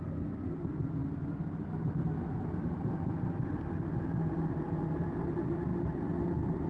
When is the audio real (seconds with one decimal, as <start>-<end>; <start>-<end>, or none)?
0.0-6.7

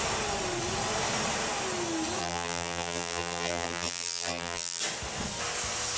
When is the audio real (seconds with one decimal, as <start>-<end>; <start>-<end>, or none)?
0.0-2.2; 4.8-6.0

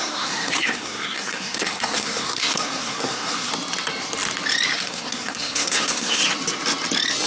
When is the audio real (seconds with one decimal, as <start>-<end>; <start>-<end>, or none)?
3.5-4.7; 6.2-7.3

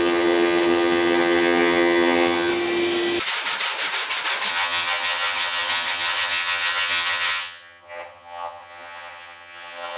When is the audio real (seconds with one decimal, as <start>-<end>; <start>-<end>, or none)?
2.5-4.5

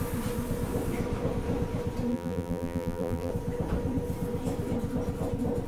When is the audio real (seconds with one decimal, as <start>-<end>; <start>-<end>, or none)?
0.0-2.1; 3.3-5.7

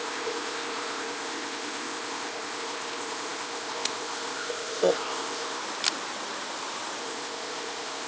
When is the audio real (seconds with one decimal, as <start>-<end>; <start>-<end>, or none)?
5.6-7.0